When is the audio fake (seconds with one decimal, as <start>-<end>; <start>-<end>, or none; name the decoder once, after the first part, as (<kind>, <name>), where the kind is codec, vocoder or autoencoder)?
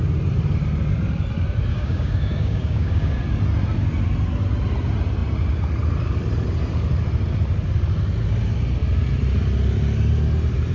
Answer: 1.7-3.2 (codec, DAC)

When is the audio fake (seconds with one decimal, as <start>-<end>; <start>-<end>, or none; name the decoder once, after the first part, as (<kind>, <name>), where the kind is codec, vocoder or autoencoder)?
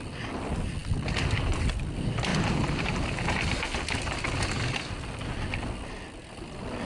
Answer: none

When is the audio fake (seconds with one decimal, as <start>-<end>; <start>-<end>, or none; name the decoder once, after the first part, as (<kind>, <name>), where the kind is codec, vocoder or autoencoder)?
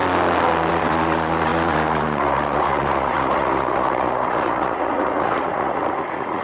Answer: 0.7-6.4 (vocoder, Vocos)